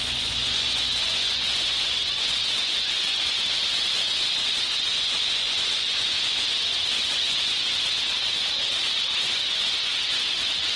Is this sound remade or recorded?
remade